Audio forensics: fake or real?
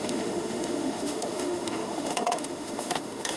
fake